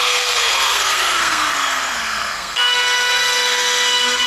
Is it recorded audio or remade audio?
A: remade